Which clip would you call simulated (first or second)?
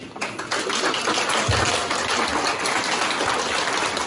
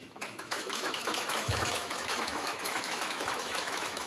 second